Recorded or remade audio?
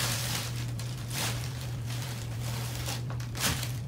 remade